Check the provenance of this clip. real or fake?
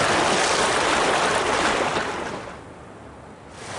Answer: real